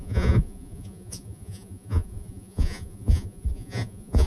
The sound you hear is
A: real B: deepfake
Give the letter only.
B